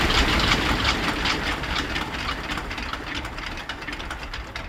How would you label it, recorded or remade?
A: recorded